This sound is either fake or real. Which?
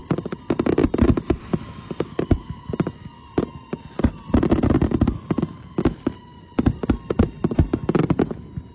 real